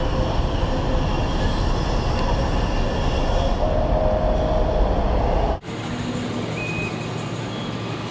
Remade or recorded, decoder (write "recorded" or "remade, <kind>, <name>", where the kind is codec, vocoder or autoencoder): recorded